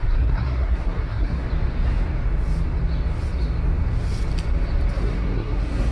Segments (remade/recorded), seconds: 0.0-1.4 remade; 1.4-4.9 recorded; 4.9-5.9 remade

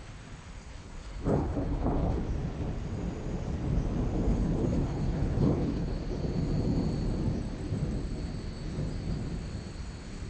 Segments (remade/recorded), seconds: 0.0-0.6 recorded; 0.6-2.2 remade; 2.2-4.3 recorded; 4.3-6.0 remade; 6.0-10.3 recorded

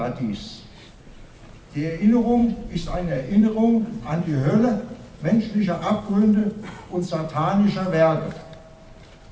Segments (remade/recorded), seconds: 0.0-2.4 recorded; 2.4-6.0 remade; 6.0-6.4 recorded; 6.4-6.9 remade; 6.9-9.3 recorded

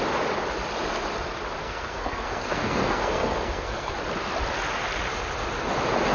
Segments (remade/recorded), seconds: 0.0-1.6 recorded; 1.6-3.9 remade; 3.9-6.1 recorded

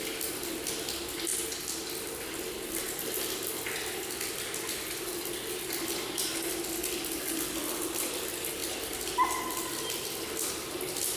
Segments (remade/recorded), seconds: 0.0-11.2 recorded

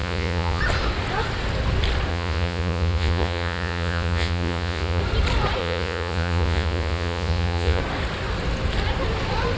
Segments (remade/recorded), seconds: 0.0-0.6 remade; 0.6-2.1 recorded; 2.1-5.0 remade; 5.0-5.6 recorded; 5.6-7.8 remade; 7.8-9.6 recorded

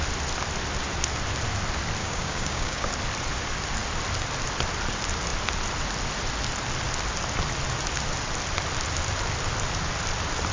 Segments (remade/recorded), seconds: 0.0-2.0 recorded; 2.0-2.9 remade; 2.9-10.5 recorded